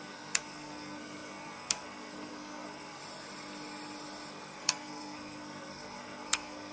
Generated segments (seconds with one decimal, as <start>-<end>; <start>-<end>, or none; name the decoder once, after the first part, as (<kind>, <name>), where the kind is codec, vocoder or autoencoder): 0.0-3.0 (codec, SNAC); 4.3-6.7